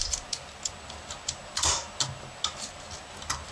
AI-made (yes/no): no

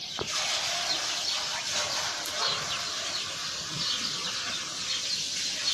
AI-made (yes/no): no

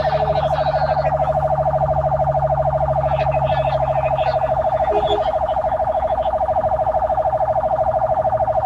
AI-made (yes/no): no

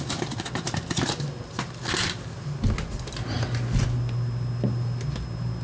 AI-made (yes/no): no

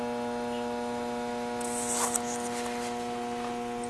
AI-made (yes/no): no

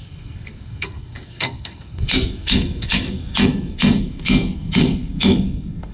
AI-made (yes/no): yes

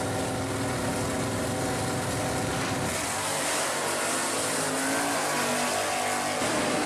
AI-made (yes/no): no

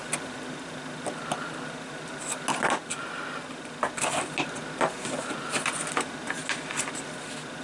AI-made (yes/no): no